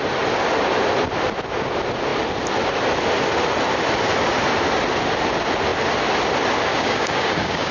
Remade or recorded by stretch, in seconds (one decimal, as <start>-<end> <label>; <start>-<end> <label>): 0.0-6.7 recorded; 6.7-7.7 remade